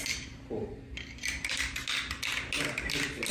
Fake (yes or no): no